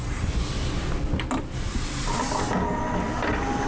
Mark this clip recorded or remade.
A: recorded